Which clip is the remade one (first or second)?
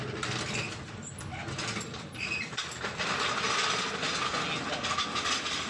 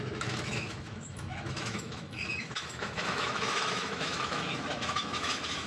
second